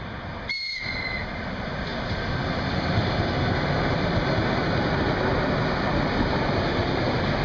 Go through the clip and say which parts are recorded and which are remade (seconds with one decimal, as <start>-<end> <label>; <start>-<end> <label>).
0.0-7.4 recorded